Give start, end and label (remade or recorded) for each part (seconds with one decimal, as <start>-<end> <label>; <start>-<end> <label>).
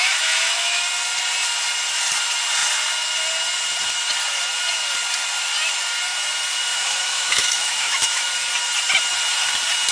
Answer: 0.0-0.8 remade; 0.8-6.7 recorded; 6.7-8.3 remade; 8.3-9.9 recorded